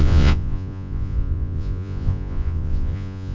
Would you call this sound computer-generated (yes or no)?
yes